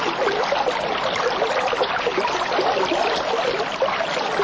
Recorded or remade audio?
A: recorded